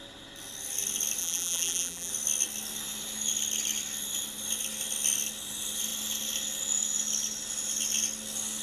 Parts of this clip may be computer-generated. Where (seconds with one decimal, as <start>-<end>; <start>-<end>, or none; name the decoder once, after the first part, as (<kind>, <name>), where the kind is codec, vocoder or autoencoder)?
1.2-2.1 (vocoder, BigVGAN v2)